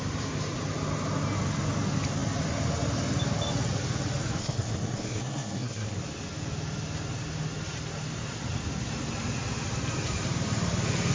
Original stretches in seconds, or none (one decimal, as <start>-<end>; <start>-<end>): 0.0-4.4; 6.0-11.1